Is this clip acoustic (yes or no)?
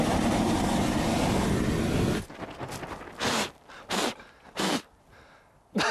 yes